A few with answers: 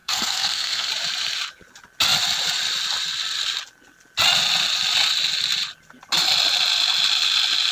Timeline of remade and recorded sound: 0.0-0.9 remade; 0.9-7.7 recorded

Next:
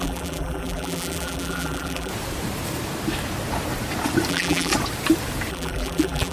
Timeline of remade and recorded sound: 0.0-2.1 remade; 2.1-4.3 recorded; 4.3-4.7 remade; 4.7-5.5 recorded; 5.5-6.3 remade

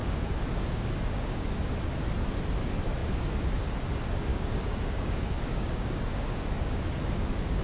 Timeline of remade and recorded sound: 0.0-1.6 remade; 1.6-4.3 recorded; 4.3-7.6 remade

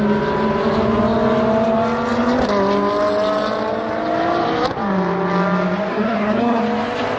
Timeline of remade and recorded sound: 0.0-5.9 recorded; 5.9-6.6 remade; 6.6-7.2 recorded